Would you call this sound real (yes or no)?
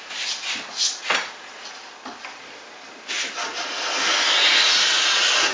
yes